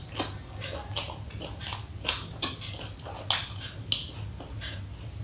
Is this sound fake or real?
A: real